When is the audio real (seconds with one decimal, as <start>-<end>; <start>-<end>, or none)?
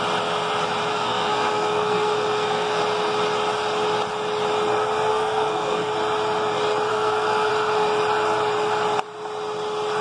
0.0-0.9; 2.8-5.1; 5.9-6.9; 7.5-10.0